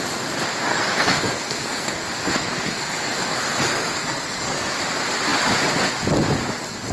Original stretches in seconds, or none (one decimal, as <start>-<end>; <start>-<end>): 0.0-0.7; 4.8-6.9